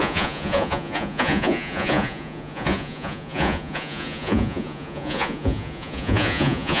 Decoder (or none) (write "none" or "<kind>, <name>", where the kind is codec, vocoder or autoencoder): vocoder, Vocos